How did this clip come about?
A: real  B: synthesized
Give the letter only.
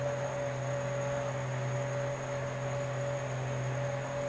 A